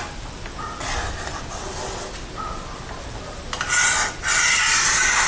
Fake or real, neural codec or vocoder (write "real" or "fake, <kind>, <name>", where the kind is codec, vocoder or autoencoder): real